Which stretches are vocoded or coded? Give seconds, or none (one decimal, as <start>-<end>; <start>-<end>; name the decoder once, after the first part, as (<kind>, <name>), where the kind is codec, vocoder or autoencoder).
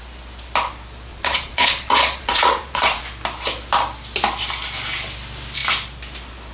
1.1-3.0 (vocoder, Vocos)